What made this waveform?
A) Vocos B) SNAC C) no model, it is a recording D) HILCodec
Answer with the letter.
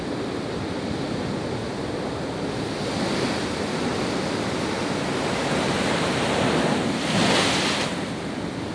C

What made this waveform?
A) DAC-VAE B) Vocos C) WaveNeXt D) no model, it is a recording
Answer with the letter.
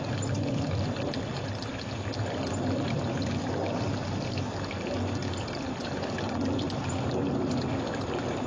D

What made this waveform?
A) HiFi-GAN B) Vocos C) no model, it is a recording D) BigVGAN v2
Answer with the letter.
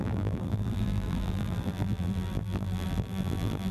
D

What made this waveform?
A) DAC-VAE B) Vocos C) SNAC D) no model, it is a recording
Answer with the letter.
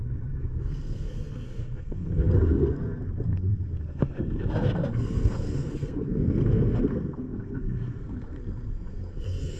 C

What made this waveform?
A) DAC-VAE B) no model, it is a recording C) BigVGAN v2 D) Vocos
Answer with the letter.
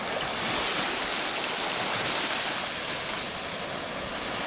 B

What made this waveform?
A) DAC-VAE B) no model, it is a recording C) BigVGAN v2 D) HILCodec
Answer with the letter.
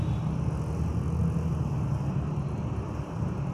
B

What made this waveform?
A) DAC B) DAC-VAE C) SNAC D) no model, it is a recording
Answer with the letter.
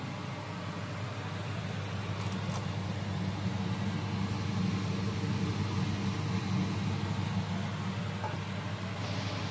D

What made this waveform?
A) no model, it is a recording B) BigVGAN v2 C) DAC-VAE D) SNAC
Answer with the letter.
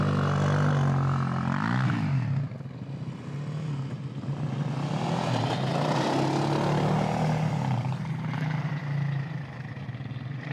A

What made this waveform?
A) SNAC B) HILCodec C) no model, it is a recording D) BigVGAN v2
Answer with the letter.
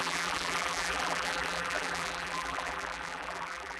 D